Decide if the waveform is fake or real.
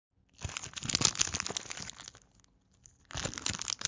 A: real